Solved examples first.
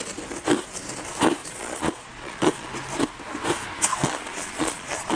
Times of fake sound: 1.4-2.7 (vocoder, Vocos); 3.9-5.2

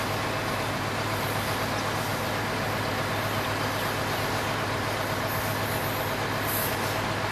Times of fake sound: none

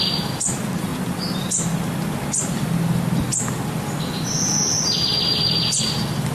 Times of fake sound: none

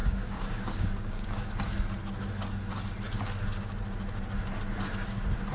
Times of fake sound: 0.0-1.5 (codec, DAC)

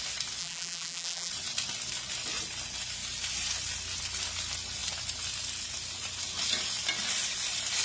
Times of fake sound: 0.4-1.3 (vocoder, BigVGAN v2)

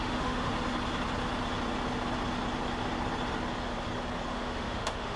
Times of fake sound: 0.0-0.5 (autoencoder, DAC-VAE); 4.3-5.2